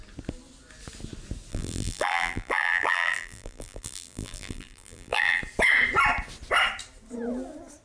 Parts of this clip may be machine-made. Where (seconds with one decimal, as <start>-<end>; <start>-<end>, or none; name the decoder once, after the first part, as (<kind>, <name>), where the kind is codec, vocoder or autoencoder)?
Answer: 1.5-5.4 (vocoder, BigVGAN v2)